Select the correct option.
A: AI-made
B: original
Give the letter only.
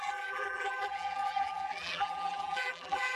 A